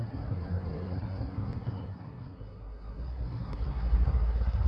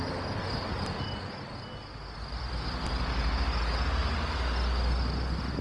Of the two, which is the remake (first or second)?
first